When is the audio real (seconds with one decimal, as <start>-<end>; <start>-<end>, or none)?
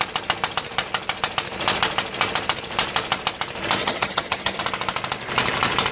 0.0-3.8; 4.6-5.9